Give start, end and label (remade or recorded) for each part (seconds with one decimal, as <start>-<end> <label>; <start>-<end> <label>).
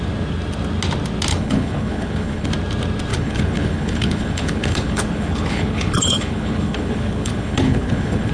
0.0-1.3 recorded; 1.3-2.5 remade; 2.5-3.1 recorded; 3.1-8.3 remade